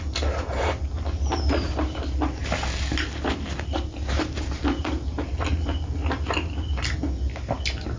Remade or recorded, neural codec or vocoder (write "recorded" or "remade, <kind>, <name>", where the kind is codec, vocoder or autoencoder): recorded